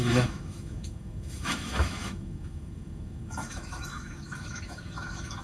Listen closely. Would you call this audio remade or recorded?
remade